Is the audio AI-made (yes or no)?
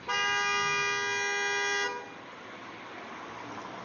no